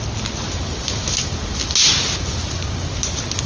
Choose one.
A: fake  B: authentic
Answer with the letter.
B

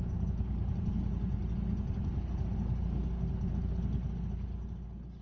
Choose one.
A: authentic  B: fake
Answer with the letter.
A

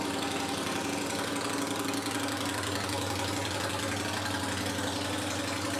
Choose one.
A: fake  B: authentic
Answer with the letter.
B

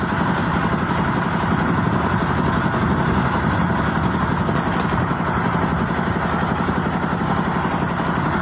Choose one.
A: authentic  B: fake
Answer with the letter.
A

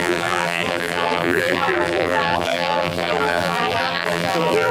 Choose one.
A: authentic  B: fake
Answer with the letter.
B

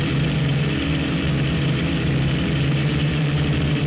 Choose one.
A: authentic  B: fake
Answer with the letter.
B